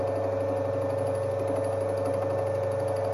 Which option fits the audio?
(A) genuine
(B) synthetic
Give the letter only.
A